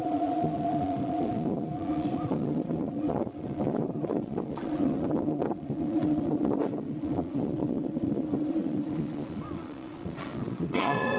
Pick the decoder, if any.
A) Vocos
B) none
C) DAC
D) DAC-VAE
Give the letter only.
A